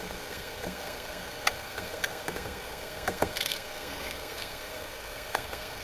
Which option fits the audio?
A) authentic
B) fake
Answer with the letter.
B